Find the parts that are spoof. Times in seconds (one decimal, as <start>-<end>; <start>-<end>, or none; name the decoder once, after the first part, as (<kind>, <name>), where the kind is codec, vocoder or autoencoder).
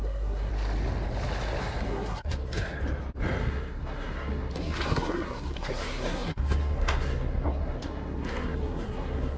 0.0-0.5 (codec, SNAC); 1.6-2.8; 3.4-9.4